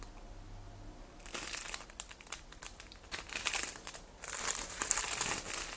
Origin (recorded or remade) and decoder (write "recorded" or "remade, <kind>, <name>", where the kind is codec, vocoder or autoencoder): recorded